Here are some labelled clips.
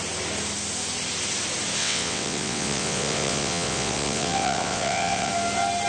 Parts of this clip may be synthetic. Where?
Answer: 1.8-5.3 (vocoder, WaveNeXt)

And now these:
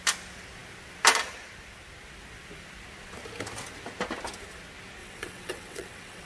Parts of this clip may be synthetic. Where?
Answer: 5.0-6.3 (vocoder, WaveNeXt)

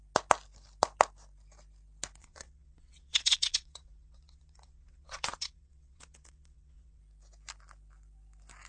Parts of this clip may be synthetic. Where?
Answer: 2.2-7.0 (vocoder, WaveNeXt)

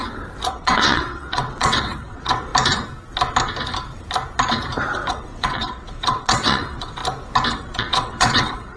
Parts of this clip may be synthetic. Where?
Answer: 0.5-2.5 (vocoder, WaveNeXt); 5.1-7.0; 7.5-8.8

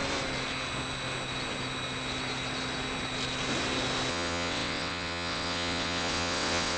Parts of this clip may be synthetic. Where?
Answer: 4.1-6.8 (vocoder, WaveNeXt)

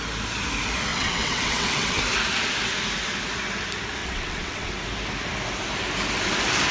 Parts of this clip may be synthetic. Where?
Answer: 0.9-2.0 (vocoder, WaveNeXt); 4.0-4.7

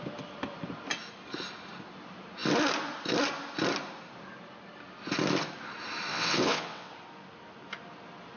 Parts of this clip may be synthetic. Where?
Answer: 6.1-6.9 (vocoder, WaveNeXt)

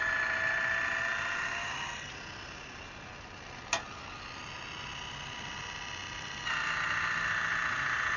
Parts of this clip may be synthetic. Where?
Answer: none